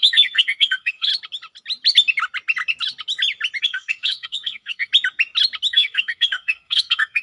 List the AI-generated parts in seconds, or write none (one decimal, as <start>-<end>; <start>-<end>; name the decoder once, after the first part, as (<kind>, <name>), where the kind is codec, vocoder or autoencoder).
0.0-1.1 (codec, SNAC); 3.6-4.9; 5.7-7.2